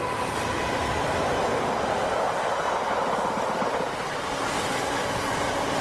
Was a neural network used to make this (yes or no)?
no